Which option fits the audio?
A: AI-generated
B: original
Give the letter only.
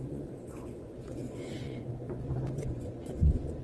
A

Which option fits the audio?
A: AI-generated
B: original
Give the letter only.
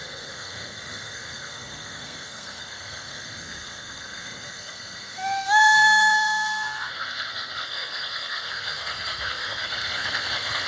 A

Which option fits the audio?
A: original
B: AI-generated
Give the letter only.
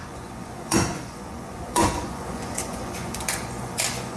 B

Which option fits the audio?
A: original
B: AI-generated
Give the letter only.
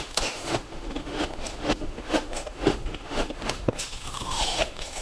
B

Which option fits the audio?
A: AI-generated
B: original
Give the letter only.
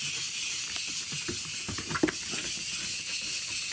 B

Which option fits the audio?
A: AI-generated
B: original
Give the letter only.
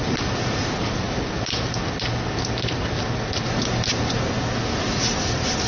B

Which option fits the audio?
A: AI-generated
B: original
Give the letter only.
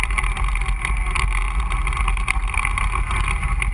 B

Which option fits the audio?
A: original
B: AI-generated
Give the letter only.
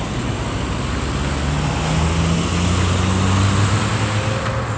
A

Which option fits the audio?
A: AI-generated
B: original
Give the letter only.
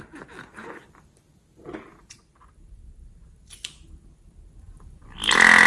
B